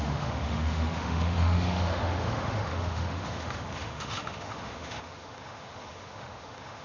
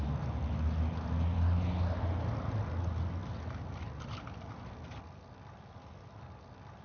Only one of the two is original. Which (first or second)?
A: second